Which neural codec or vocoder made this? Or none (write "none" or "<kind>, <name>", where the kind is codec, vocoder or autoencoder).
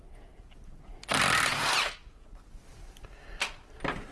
none